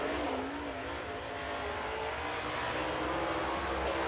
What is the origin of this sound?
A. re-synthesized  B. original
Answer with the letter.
B